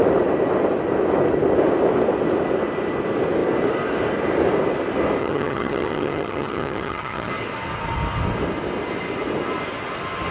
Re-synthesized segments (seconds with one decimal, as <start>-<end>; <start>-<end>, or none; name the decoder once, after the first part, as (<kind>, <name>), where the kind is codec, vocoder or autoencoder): 5.2-7.3 (vocoder, HiFi-GAN)